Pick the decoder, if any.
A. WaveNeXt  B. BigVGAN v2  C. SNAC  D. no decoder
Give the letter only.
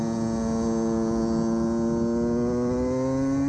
D